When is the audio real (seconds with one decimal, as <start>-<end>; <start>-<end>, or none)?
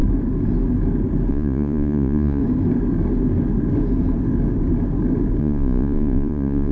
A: 0.0-1.3; 2.4-5.4